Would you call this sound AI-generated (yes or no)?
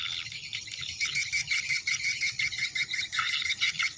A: no